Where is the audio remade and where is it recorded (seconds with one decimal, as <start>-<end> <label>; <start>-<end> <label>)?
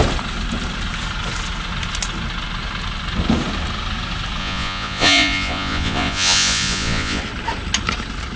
0.0-4.4 recorded; 4.4-7.2 remade; 7.2-8.4 recorded